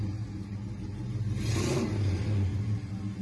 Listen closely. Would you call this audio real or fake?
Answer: real